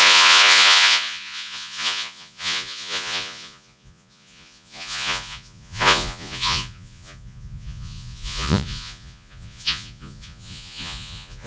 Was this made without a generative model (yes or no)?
no